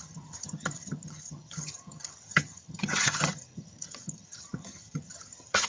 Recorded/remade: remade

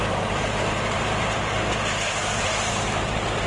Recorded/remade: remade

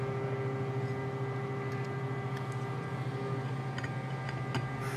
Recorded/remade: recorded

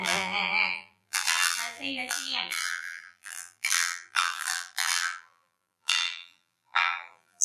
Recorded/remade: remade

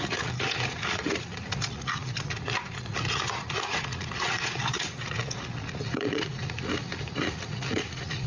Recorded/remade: remade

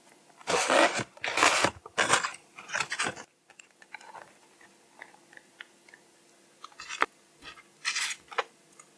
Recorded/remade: recorded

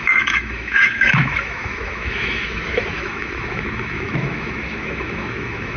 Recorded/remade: remade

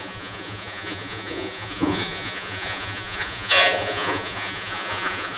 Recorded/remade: remade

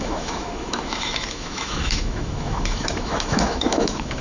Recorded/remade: remade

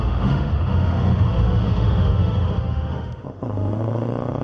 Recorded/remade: remade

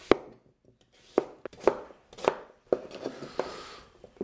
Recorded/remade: recorded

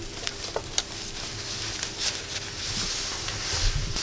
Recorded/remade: recorded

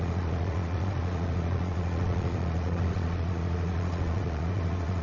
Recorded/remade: remade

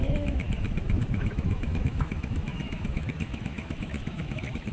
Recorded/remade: remade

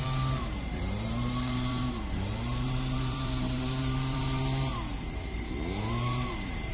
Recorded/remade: remade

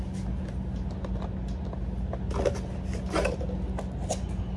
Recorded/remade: recorded